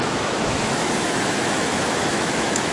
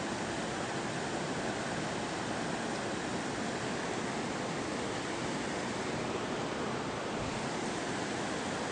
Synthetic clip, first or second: first